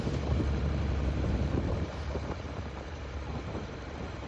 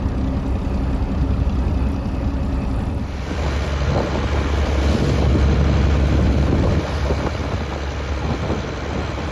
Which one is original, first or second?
second